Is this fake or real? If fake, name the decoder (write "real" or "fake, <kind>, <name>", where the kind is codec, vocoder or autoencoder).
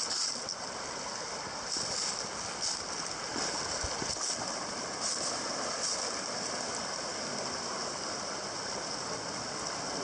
real